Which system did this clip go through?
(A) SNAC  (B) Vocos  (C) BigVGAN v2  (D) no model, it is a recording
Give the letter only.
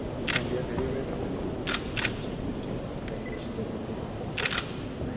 D